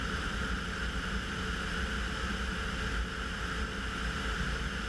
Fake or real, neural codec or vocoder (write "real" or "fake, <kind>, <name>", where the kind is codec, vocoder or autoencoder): real